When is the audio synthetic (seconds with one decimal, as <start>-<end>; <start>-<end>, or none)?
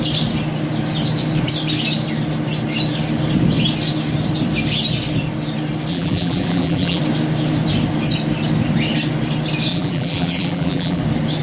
5.9-7.0; 9.7-11.0